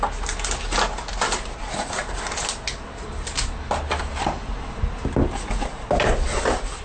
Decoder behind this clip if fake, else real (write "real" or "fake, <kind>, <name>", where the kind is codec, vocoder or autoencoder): real